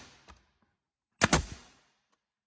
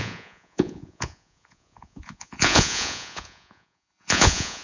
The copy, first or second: second